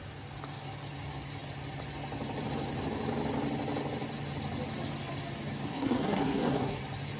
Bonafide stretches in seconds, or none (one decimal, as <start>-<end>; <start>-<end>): 0.0-5.7; 6.8-7.2